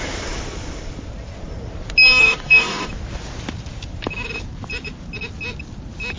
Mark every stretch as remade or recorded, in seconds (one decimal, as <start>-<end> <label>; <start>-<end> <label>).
0.0-2.2 recorded; 2.2-2.9 remade; 2.9-6.2 recorded